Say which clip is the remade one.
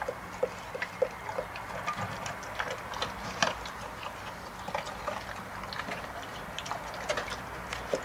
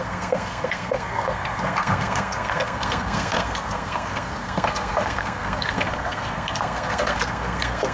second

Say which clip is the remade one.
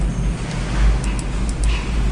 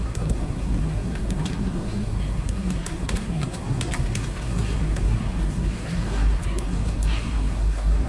second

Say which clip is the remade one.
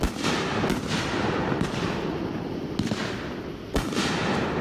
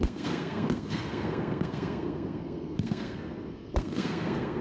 second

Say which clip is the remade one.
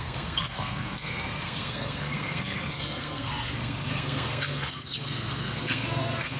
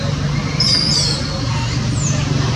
first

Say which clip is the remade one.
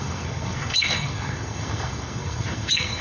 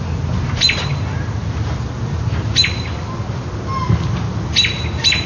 first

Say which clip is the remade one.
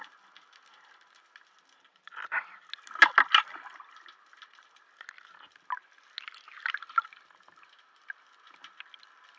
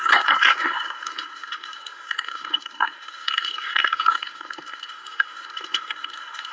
second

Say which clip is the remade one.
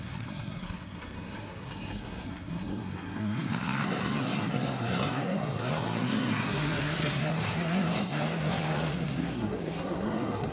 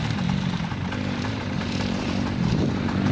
first